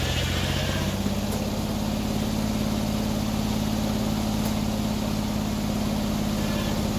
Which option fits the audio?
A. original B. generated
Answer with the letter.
A